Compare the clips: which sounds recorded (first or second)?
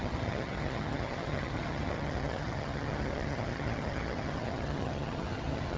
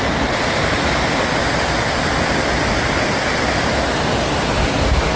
second